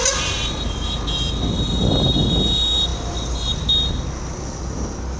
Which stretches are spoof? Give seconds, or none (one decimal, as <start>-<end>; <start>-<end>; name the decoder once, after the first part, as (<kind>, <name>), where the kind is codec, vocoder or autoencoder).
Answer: none